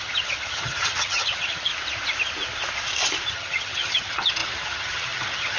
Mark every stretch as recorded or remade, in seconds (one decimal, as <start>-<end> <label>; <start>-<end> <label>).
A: 0.0-1.7 remade; 1.7-3.3 recorded; 3.3-5.6 remade